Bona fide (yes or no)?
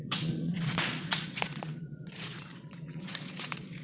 no